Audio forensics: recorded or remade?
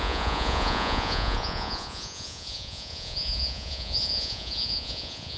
remade